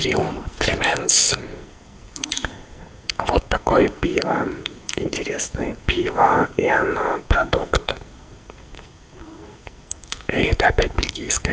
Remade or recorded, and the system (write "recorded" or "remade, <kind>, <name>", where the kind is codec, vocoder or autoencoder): remade, codec, SNAC